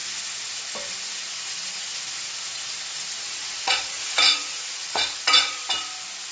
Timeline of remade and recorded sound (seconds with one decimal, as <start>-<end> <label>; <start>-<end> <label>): 0.0-1.0 recorded; 1.0-1.9 remade; 1.9-2.9 recorded; 2.9-5.6 remade; 5.6-6.3 recorded